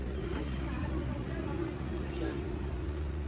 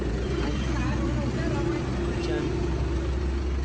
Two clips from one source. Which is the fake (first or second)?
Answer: first